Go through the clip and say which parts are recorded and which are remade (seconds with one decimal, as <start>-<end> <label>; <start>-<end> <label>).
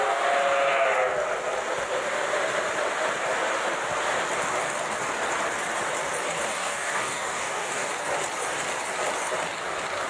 0.0-6.5 recorded; 6.5-7.9 remade; 7.9-10.1 recorded